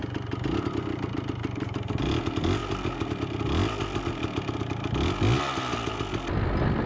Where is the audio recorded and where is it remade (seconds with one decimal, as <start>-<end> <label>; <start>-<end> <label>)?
0.0-6.9 recorded